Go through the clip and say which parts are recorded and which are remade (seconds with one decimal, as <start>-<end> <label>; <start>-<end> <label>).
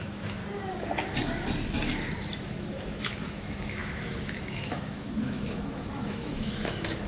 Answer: 0.0-0.4 remade; 0.4-2.3 recorded; 2.3-7.1 remade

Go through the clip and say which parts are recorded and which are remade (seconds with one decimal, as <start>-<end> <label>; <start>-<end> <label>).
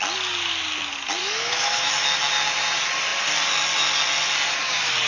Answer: 0.0-1.2 recorded; 1.2-1.9 remade; 1.9-5.1 recorded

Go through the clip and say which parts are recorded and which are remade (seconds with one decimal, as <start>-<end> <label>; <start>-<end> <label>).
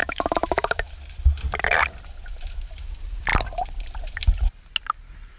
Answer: 0.0-1.0 remade; 1.0-5.4 recorded